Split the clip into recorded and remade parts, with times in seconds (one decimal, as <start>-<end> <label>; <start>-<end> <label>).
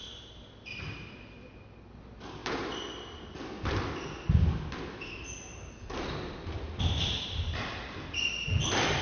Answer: 0.0-9.0 recorded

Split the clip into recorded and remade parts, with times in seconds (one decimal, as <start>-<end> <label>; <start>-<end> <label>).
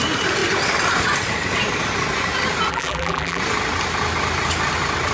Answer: 0.0-2.7 recorded; 2.7-3.4 remade; 3.4-5.1 recorded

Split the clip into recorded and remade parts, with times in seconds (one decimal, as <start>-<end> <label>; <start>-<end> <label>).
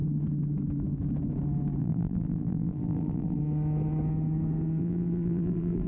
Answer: 0.0-1.8 recorded; 1.8-3.4 remade; 3.4-4.8 recorded; 4.8-5.9 remade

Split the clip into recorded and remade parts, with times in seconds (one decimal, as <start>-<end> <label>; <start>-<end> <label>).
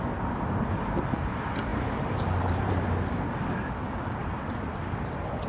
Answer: 0.0-1.7 recorded; 1.7-2.7 remade; 2.7-4.2 recorded; 4.2-4.8 remade; 4.8-5.5 recorded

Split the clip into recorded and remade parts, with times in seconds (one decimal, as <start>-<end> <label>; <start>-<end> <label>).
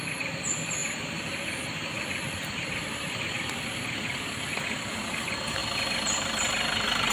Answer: 0.0-0.8 remade; 0.8-2.2 recorded; 2.2-5.6 remade; 5.6-7.1 recorded